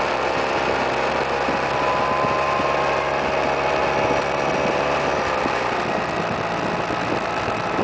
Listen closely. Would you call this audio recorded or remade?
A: recorded